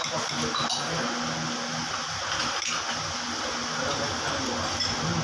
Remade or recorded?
recorded